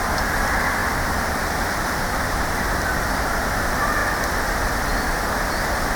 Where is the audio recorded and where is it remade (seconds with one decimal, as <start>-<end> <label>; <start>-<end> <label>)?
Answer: 0.0-0.8 recorded; 0.8-2.6 remade; 2.6-4.9 recorded; 4.9-5.5 remade; 5.5-6.0 recorded